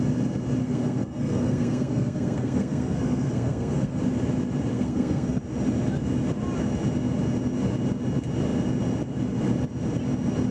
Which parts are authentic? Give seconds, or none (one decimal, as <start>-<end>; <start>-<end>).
0.0-0.6; 4.0-4.7; 5.4-10.5